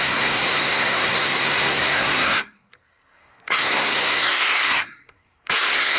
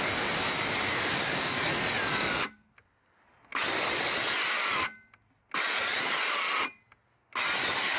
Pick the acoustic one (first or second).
second